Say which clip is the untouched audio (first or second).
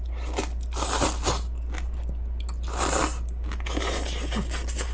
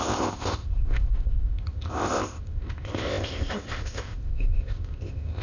first